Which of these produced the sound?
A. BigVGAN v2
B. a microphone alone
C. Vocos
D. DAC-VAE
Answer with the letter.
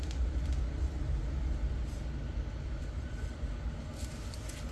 B